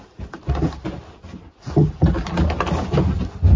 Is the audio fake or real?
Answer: real